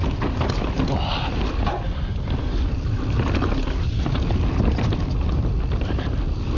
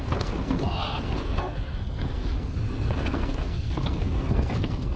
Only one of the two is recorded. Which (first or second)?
first